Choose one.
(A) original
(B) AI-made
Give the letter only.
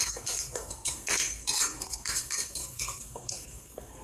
B